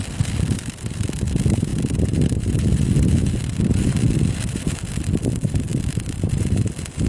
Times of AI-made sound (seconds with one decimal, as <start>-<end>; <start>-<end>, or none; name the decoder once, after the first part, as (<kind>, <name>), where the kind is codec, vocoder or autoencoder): none